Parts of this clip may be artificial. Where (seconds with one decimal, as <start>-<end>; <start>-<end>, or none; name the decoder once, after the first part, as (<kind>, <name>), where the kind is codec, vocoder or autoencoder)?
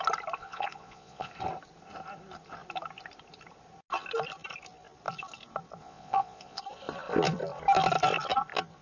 0.4-1.3 (vocoder, Vocos); 5.8-6.6